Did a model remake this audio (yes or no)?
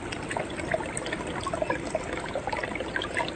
no